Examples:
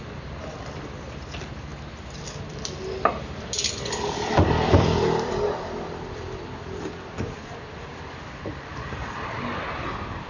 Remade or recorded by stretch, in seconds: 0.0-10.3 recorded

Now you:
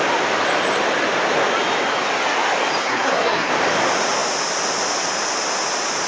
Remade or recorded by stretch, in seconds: 0.0-2.8 recorded; 2.8-3.5 remade; 3.5-6.1 recorded